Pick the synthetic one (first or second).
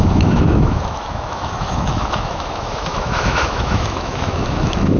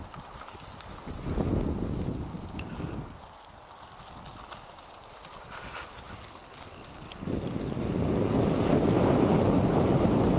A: first